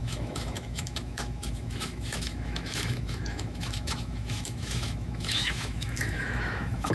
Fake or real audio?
fake